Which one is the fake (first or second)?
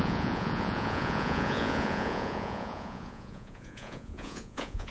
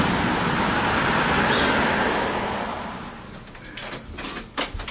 first